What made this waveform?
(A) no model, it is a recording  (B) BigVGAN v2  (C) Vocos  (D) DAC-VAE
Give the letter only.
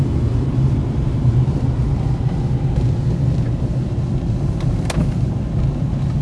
A